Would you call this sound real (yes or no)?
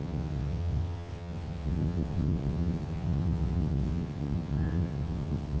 no